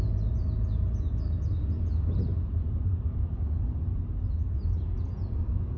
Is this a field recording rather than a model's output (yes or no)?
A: no